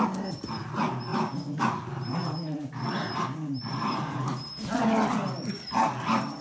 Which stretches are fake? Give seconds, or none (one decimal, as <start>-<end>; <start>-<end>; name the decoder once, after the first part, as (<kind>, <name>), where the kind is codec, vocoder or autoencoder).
1.1-4.8 (vocoder, BigVGAN v2)